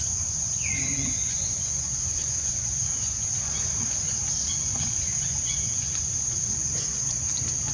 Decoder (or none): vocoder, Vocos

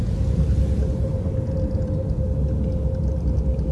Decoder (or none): none